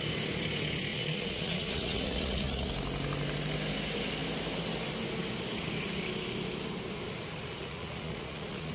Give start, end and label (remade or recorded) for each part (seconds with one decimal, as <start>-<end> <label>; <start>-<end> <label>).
0.0-0.9 recorded; 0.9-2.7 remade; 2.7-7.6 recorded; 7.6-8.7 remade